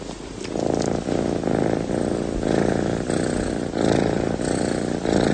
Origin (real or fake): real